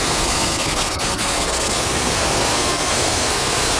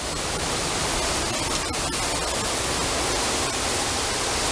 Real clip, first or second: second